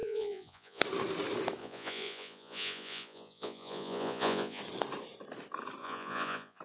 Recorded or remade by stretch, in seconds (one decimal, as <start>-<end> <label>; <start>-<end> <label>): 0.0-0.8 remade; 0.8-1.6 recorded; 1.6-4.6 remade; 4.6-5.8 recorded; 5.8-6.6 remade